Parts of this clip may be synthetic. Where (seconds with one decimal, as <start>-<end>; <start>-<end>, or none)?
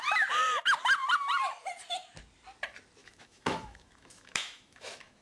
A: 3.0-5.2